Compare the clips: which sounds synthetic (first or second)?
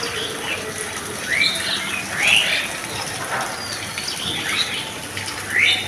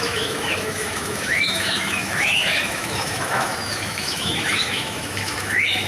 second